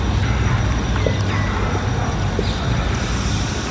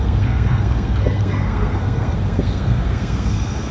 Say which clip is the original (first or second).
first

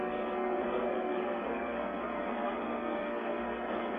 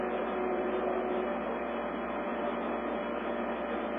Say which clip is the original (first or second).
second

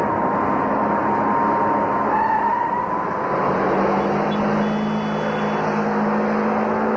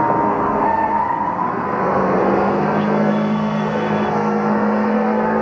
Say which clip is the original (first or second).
first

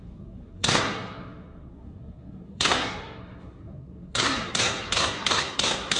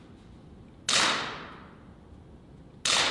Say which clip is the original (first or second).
second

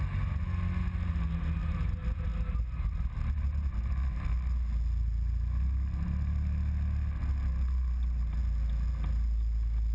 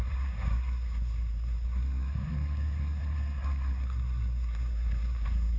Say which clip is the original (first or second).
first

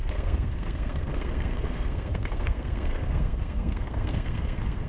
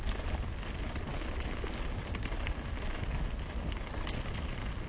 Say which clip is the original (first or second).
second